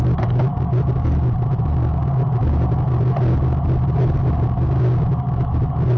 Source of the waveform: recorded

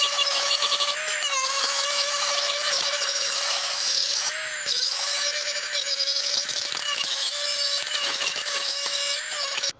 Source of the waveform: remade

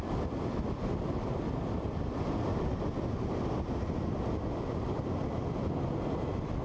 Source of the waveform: recorded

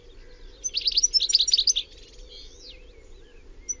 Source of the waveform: recorded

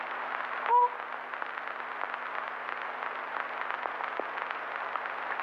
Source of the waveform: recorded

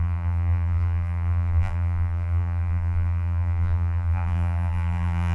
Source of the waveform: remade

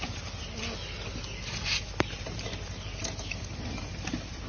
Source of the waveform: recorded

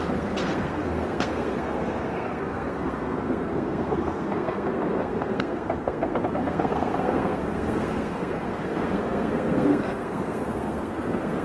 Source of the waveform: remade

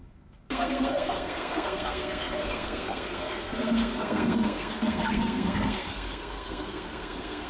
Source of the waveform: remade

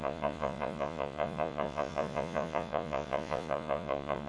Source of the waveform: remade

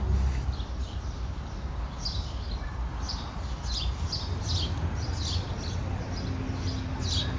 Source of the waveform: recorded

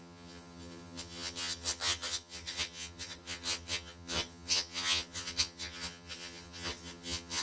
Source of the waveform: remade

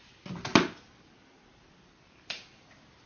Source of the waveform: recorded